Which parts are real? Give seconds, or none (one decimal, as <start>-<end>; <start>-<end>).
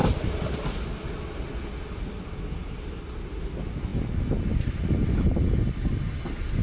0.0-6.6